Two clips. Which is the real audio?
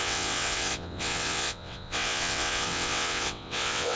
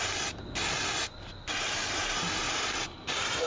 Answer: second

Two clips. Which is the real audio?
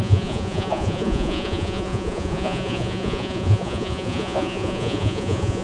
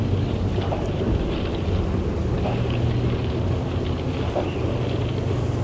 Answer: second